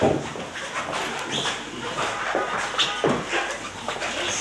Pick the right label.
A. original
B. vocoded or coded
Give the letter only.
A